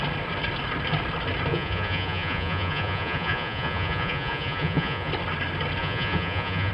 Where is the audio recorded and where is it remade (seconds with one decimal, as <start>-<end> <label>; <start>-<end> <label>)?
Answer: 0.0-1.5 recorded; 1.5-5.1 remade; 5.1-5.8 recorded; 5.8-6.7 remade